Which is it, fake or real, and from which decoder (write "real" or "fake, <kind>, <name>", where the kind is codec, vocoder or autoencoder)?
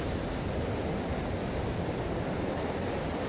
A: real